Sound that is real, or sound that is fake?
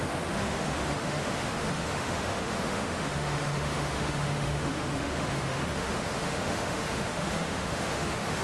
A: fake